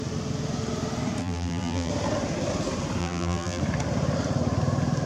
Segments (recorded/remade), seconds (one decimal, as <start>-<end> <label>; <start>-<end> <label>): 0.0-1.2 recorded; 1.2-1.9 remade; 1.9-3.0 recorded; 3.0-3.6 remade; 3.6-5.1 recorded